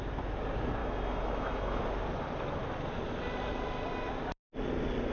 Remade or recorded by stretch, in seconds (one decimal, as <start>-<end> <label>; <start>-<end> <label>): 0.0-0.8 recorded; 0.8-1.8 remade; 1.8-5.1 recorded